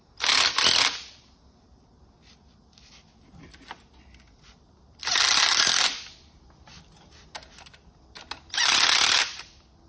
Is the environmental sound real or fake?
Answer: real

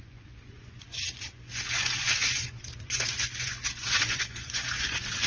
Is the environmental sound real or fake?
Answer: fake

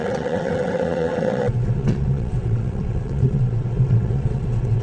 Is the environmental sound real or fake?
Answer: fake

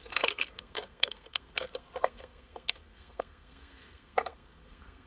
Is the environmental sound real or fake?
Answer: fake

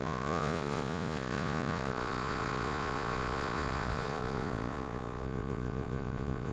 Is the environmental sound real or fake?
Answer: fake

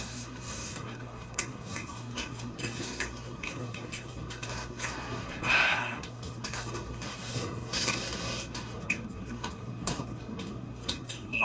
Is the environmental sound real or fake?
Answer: fake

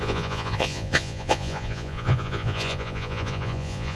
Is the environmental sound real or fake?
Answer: fake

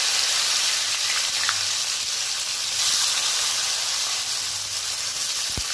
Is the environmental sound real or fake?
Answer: real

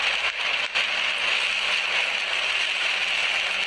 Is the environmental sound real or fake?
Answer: real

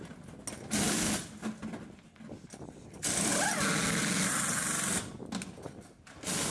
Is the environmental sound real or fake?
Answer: real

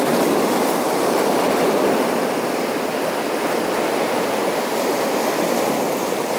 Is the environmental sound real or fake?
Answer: real